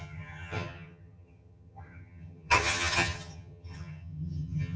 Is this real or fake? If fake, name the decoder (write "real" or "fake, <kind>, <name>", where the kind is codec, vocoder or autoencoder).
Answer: fake, vocoder, HiFi-GAN